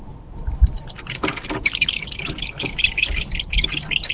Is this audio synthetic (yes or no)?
no